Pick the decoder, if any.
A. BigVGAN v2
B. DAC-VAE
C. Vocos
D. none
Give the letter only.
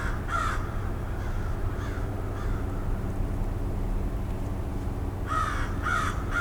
D